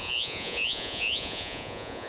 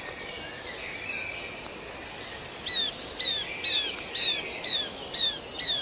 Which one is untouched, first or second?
second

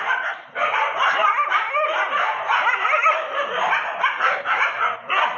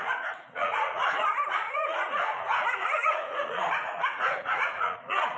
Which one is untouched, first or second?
first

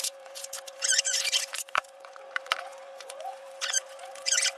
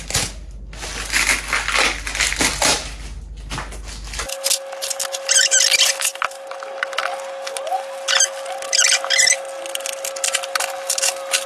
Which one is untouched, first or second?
second